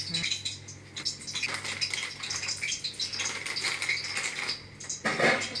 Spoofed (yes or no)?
no